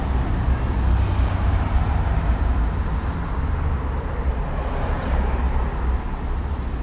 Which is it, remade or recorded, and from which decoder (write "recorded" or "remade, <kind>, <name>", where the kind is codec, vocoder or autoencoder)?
recorded